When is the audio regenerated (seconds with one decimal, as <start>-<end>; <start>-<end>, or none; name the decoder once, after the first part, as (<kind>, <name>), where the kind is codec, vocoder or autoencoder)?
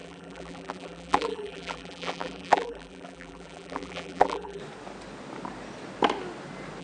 0.0-4.6 (vocoder, BigVGAN v2)